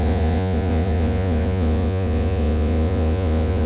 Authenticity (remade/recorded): remade